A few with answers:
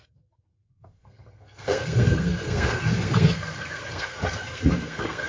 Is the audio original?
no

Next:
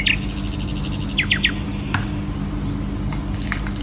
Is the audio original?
yes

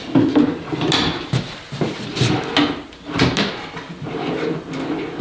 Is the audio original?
yes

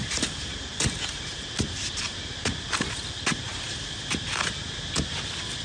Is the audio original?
yes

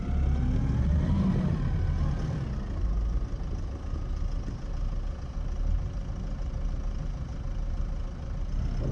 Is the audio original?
yes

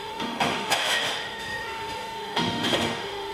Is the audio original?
no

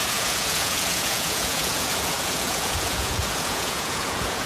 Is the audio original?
no